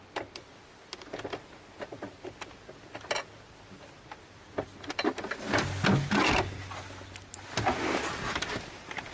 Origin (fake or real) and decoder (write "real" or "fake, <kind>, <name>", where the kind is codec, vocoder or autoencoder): real